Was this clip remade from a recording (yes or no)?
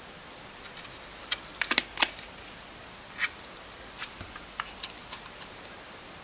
no